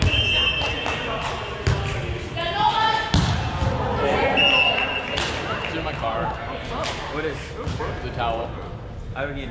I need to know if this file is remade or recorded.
recorded